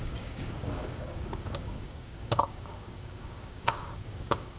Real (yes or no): no